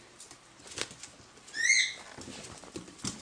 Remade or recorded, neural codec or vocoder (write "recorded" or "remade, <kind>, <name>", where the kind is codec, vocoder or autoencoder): recorded